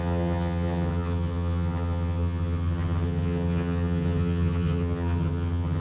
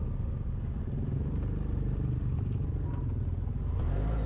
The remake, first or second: first